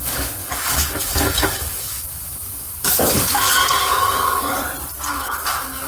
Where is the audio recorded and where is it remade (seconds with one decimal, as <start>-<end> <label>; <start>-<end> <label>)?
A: 0.0-4.6 remade; 4.6-5.1 recorded; 5.1-5.9 remade